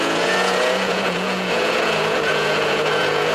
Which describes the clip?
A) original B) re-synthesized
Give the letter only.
B